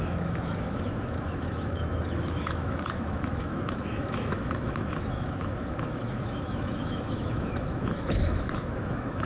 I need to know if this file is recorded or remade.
remade